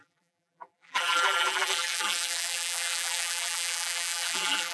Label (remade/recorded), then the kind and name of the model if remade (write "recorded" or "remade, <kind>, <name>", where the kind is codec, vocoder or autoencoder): remade, vocoder, BigVGAN v2